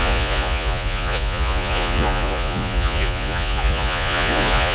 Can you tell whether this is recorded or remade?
remade